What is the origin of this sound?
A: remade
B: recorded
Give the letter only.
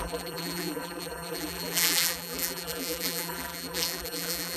A